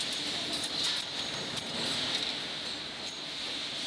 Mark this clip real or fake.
real